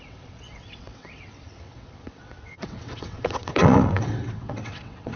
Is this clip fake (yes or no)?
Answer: yes